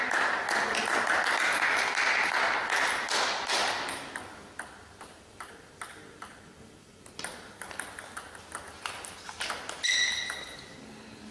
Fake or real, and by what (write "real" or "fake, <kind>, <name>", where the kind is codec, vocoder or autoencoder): real